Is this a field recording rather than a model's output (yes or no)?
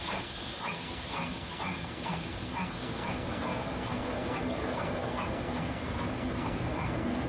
no